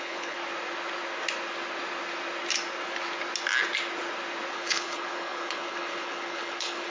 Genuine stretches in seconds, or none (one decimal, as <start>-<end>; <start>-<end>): 0.4-4.5